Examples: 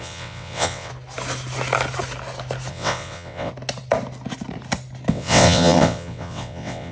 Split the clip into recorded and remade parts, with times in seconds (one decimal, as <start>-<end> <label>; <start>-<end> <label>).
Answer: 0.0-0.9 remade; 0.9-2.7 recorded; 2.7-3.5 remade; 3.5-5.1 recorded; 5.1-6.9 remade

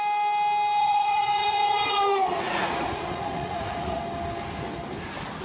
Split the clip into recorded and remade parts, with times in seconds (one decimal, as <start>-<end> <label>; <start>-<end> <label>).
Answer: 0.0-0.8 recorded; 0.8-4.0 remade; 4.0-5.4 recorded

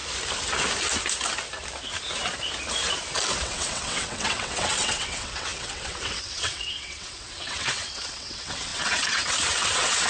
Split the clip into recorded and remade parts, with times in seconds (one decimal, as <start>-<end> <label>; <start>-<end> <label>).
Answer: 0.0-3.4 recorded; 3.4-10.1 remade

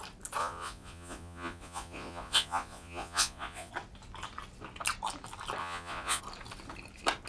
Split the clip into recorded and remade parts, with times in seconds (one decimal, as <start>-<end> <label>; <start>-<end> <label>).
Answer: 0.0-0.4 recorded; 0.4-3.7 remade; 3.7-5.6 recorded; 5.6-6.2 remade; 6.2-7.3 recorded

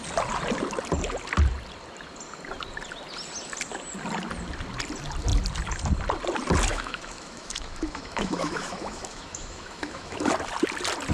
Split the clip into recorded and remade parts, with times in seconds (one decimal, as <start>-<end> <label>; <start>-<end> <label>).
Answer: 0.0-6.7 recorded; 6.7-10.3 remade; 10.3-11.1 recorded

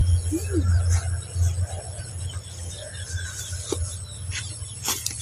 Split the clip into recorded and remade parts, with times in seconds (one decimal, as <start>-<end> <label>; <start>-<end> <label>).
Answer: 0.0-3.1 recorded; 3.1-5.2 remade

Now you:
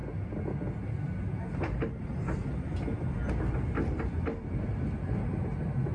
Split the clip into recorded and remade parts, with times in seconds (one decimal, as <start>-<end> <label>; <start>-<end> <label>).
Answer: 0.0-5.9 recorded

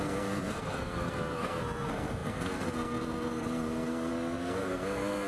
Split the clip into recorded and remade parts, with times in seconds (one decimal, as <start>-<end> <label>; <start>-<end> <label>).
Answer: 0.0-5.3 remade